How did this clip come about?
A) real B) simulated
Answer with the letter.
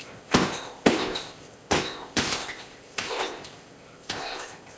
B